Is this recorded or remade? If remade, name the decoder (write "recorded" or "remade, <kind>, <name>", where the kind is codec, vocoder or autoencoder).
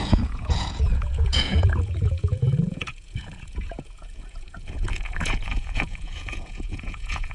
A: remade, vocoder, Vocos